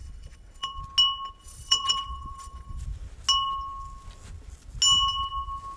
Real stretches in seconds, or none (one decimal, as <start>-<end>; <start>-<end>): 0.8-1.4; 2.8-5.8